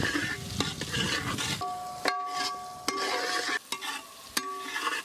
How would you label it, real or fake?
real